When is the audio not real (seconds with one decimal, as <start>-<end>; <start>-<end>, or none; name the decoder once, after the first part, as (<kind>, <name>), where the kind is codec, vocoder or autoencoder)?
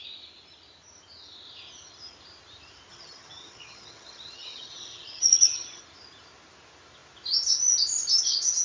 2.9-5.8 (vocoder, HiFi-GAN)